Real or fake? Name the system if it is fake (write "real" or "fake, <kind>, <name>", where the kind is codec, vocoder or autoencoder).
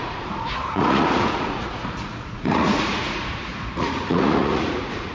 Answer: fake, vocoder, Vocos